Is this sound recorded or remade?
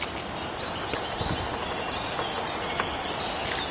recorded